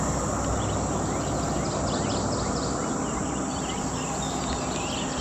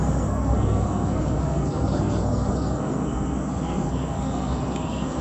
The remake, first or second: second